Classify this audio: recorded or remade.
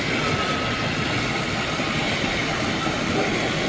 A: recorded